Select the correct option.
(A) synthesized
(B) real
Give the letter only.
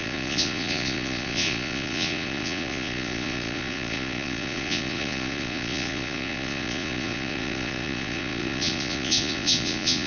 A